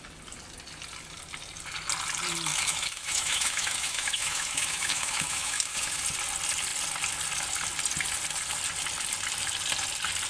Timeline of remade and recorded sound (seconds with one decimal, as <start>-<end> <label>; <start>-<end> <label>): 0.0-2.5 recorded; 2.5-6.0 remade; 6.0-10.3 recorded